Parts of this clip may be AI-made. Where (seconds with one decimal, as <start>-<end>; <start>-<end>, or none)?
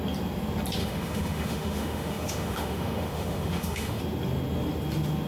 0.8-4.0